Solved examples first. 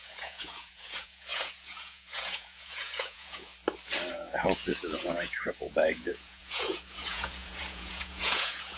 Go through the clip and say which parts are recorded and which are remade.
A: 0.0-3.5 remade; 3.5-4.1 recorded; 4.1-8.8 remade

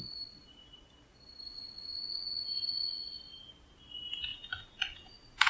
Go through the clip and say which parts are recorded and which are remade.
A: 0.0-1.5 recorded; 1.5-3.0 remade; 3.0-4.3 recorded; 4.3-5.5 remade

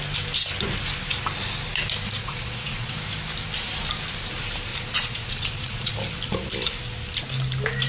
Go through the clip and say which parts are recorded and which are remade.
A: 0.0-2.2 recorded; 2.2-2.9 remade; 2.9-4.7 recorded; 4.7-5.9 remade; 5.9-7.9 recorded